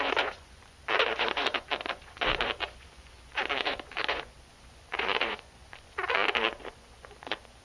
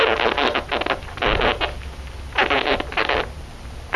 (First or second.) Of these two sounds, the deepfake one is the first